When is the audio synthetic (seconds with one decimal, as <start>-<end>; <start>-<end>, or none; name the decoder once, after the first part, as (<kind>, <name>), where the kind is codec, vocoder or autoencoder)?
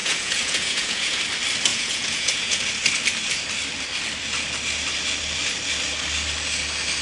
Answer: 0.0-1.2 (vocoder, Vocos); 1.7-2.6